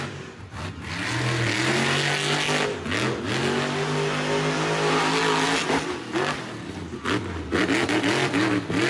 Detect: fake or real real